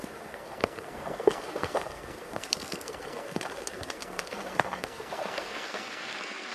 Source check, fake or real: fake